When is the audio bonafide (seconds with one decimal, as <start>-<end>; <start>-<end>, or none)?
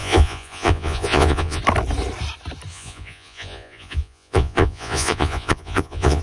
1.6-2.7